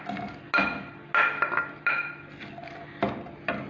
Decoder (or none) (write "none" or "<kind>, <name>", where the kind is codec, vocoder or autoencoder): none